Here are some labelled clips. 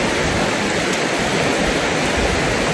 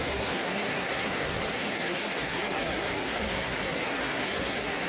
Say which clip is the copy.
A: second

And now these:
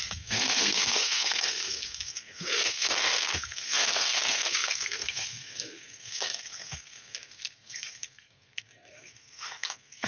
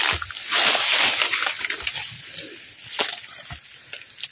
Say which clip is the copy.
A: first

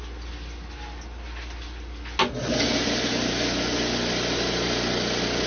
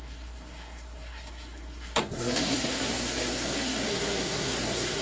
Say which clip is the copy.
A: second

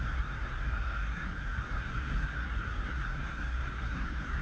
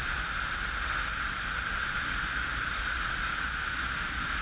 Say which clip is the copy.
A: first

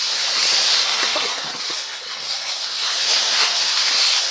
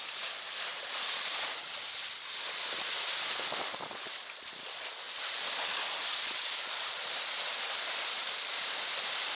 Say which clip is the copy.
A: first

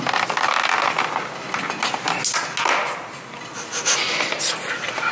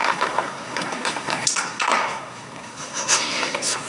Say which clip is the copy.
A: second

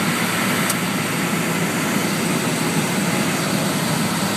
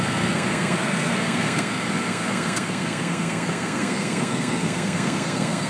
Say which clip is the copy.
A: second